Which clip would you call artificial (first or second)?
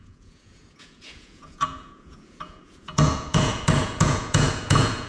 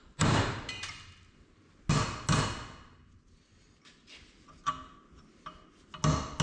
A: first